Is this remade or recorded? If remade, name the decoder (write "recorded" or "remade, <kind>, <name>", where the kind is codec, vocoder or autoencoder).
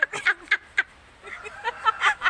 recorded